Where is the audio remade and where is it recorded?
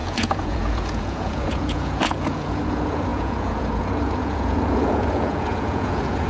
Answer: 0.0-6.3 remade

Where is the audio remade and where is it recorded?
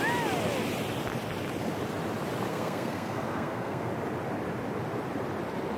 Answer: 0.0-2.5 recorded; 2.5-3.9 remade; 3.9-5.8 recorded